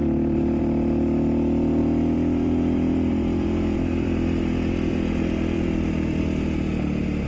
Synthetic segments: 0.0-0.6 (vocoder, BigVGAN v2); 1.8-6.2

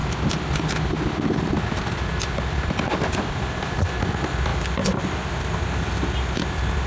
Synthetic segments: none

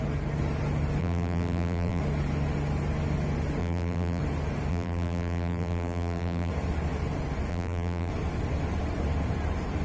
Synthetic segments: 1.0-2.0 (vocoder, BigVGAN v2); 3.6-4.2; 4.7-6.5; 7.5-8.1

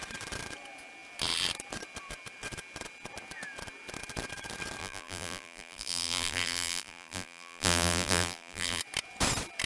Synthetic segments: 4.8-8.8 (vocoder, BigVGAN v2)

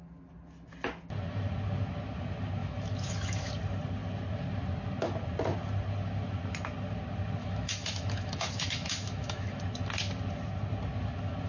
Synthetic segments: 2.6-3.5 (autoencoder, DAC-VAE); 7.4-9.6

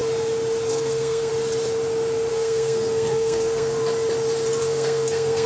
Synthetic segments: 0.7-1.3 (codec, SNAC); 2.3-3.8; 4.6-5.5

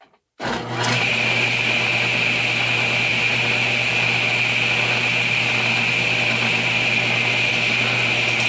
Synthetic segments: none

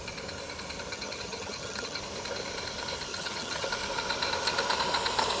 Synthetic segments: 0.9-2.0 (vocoder, HiFi-GAN); 3.1-3.7